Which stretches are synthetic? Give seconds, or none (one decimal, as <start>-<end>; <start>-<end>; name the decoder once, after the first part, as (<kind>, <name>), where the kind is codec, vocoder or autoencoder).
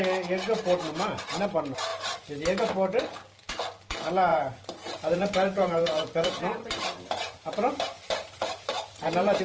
4.3-9.4 (vocoder, BigVGAN v2)